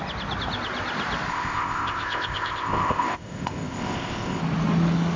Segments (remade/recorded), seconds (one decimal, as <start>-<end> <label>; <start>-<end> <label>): 0.0-1.3 recorded; 1.3-4.4 remade; 4.4-5.2 recorded